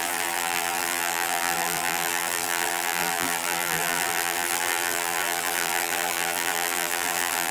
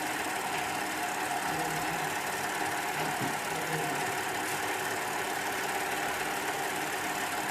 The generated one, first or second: first